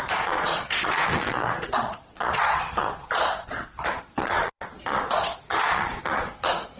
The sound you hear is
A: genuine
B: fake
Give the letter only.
B